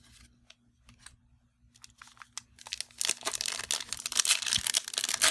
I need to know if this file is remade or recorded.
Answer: recorded